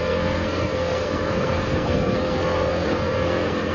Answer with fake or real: fake